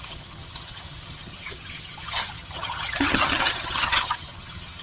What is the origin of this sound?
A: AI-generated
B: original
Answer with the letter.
A